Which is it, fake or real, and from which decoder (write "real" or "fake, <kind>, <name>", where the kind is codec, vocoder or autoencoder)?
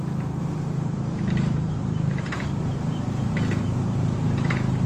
fake, vocoder, BigVGAN v2